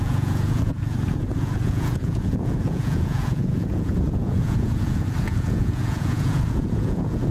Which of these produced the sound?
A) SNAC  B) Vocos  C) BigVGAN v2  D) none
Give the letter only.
B